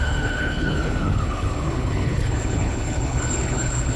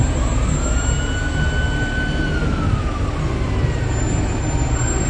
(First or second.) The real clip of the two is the second